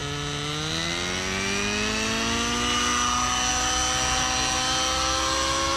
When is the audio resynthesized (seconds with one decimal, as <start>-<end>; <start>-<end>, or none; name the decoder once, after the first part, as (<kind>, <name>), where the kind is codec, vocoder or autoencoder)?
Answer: none